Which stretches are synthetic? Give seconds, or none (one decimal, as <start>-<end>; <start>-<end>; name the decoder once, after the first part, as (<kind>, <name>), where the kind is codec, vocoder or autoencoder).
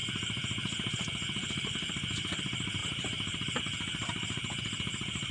none